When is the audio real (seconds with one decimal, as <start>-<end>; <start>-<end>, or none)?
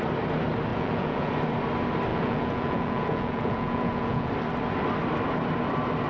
0.0-0.7; 1.3-2.1; 4.3-6.1